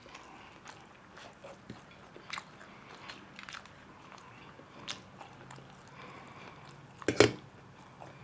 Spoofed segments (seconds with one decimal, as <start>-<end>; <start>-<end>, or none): none